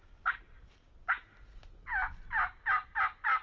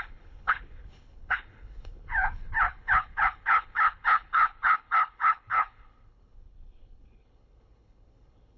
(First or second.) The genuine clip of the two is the first